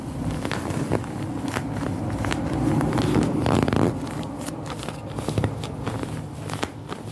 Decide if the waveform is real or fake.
fake